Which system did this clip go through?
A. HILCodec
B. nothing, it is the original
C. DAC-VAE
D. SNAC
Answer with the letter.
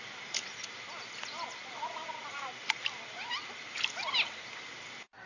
B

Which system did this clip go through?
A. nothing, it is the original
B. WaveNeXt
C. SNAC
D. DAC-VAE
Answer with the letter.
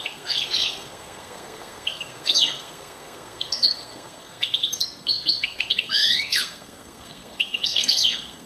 C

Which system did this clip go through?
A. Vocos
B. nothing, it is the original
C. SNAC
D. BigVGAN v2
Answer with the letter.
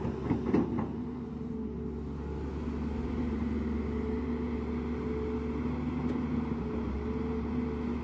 B